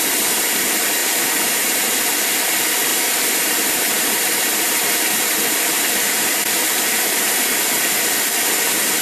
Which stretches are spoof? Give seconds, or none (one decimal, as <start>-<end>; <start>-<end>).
1.0-1.8; 2.9-7.7